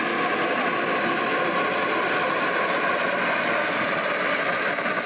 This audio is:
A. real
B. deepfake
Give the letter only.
A